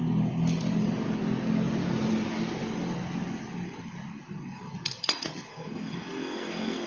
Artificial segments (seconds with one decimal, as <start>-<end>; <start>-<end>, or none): 5.5-6.9